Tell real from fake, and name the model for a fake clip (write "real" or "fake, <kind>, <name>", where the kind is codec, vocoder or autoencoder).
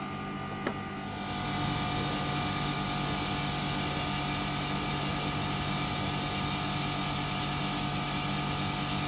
real